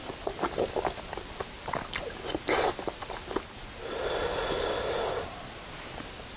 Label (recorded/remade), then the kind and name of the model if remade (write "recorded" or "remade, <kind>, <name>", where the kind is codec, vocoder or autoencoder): recorded